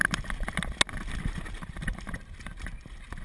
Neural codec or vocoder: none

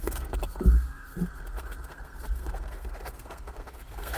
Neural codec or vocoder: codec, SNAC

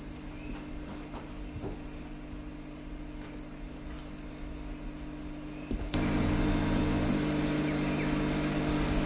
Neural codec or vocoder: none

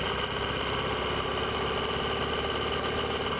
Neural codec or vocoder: none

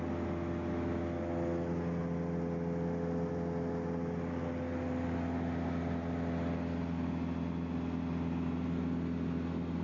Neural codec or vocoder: none